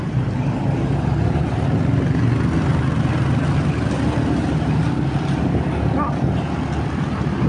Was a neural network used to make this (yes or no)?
no